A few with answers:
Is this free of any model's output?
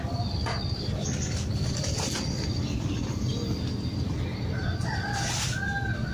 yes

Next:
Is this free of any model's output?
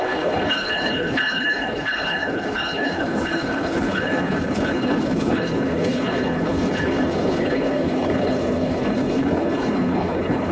no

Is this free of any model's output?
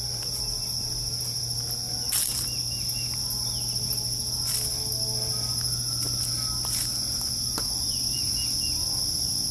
yes